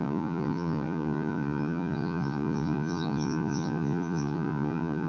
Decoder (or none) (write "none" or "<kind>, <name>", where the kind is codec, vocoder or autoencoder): vocoder, Vocos